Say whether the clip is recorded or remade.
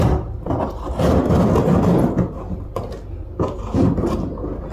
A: recorded